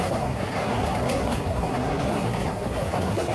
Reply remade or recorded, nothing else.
remade